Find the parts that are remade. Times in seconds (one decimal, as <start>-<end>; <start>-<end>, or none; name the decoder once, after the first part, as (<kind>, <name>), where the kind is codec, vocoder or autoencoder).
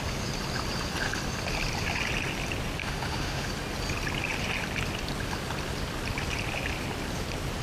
2.8-3.5 (autoencoder, DAC-VAE)